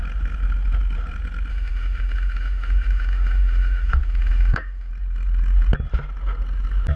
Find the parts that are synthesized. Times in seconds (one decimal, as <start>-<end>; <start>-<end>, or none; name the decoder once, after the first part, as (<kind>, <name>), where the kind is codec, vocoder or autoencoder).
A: 1.5-4.9 (autoencoder, DAC-VAE)